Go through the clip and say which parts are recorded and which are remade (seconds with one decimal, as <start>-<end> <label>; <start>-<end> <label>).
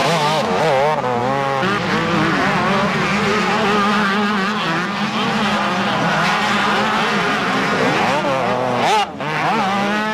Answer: 0.0-0.6 remade; 0.6-10.1 recorded